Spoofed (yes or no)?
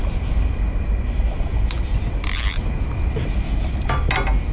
no